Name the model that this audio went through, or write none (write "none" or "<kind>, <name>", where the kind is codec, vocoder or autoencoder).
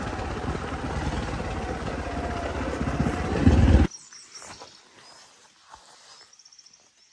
none